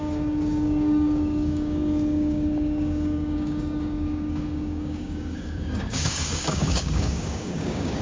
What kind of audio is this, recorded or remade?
remade